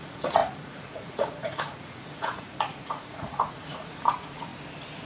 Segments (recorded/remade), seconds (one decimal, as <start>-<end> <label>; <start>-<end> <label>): 0.0-4.5 remade; 4.5-5.1 recorded